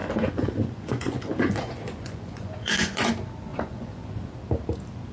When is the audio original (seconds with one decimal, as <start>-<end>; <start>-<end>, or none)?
3.1-3.5; 4.3-5.1